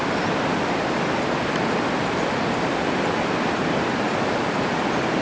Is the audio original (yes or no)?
yes